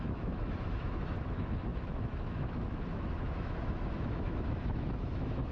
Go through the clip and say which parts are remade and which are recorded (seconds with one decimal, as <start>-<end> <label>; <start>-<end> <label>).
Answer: 0.0-5.5 remade